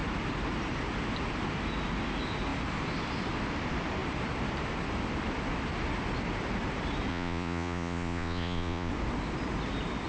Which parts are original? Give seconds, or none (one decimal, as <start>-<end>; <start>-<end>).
0.0-7.1; 8.9-10.1